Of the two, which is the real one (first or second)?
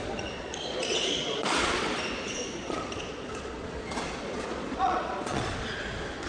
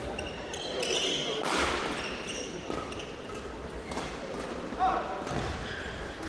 second